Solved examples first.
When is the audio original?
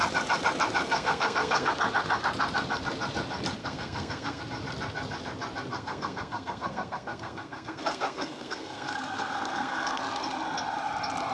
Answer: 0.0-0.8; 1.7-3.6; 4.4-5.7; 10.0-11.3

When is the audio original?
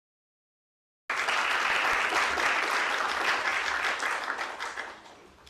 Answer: 0.0-5.5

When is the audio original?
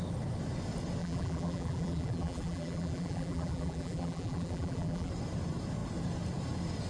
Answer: 0.0-1.0; 5.1-6.9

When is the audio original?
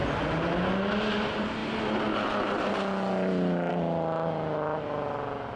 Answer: 0.0-5.6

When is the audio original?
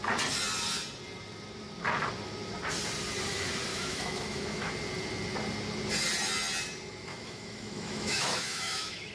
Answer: 0.0-3.7; 4.7-7.1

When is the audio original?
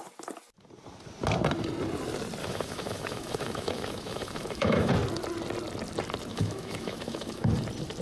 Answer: 0.0-2.4; 4.9-6.3; 7.5-8.0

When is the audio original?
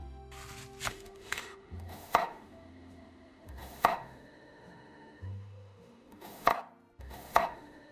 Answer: 0.0-0.9; 6.5-7.0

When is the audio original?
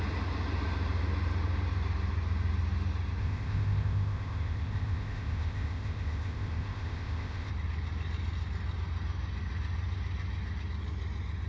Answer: 0.0-3.2; 7.5-11.5